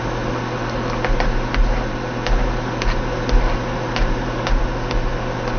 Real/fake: real